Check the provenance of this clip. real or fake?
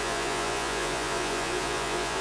fake